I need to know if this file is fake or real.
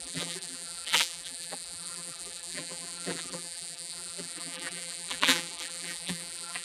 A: fake